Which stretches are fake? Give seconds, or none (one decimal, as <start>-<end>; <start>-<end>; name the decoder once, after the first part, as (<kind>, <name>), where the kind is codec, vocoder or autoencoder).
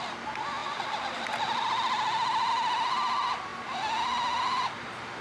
none